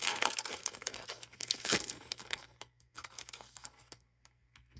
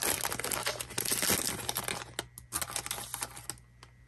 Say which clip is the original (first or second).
second